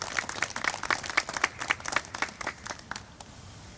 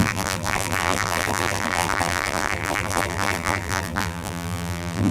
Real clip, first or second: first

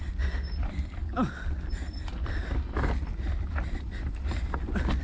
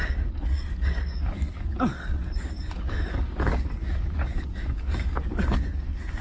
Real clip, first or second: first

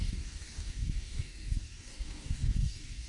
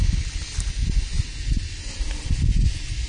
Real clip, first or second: second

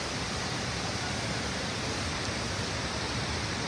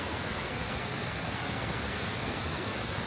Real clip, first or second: first